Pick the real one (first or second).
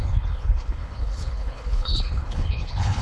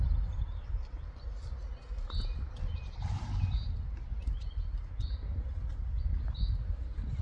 second